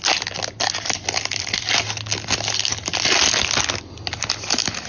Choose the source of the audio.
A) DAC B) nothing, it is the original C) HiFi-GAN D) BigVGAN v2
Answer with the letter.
B